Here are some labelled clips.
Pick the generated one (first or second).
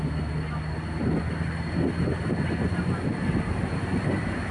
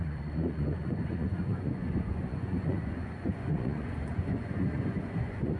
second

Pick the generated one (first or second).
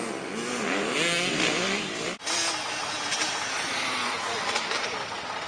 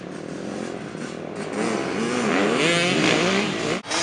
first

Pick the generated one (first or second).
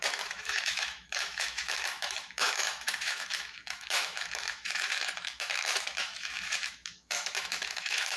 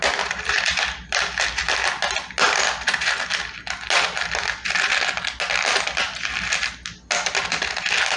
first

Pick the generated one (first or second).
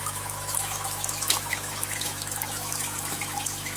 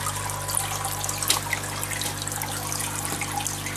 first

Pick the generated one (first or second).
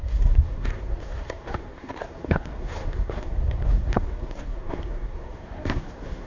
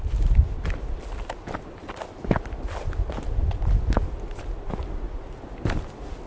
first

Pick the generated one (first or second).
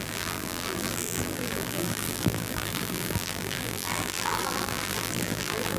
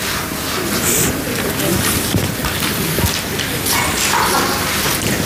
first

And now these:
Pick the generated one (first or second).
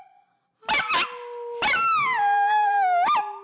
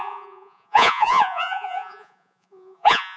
second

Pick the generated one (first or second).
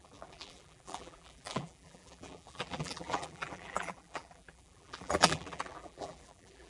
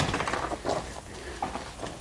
first